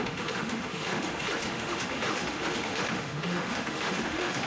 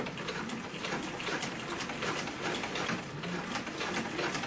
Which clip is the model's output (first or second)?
first